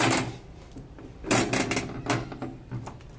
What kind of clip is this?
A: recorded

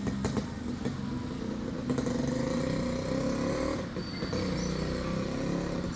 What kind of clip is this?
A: recorded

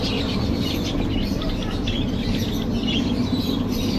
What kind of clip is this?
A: recorded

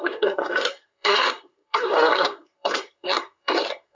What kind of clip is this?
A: remade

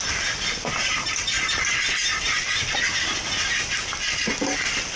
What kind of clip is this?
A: recorded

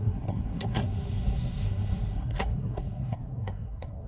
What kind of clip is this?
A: remade